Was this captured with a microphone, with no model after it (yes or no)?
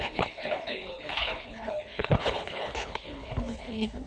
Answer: no